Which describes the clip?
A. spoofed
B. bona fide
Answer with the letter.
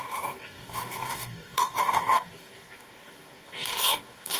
A